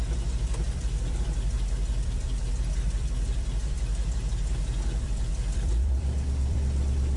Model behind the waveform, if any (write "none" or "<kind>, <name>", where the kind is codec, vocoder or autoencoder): vocoder, BigVGAN v2